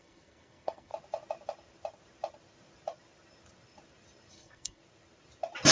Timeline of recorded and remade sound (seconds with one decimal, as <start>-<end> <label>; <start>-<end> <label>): 0.0-0.9 remade; 0.9-4.3 recorded; 4.3-4.8 remade; 4.8-5.7 recorded

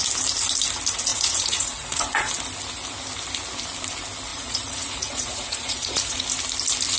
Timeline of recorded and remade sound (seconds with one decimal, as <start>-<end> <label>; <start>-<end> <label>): 0.0-1.1 recorded; 1.1-2.3 remade; 2.3-4.3 recorded; 4.3-6.2 remade; 6.2-7.0 recorded